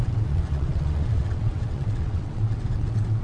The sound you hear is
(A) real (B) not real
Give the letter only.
B